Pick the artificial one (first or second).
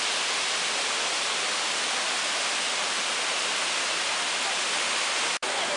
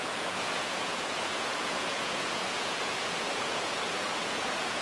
second